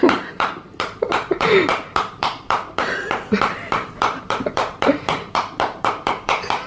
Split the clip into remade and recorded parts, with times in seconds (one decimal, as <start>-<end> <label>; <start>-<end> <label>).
0.0-6.7 remade